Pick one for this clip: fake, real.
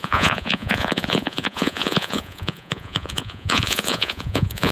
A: fake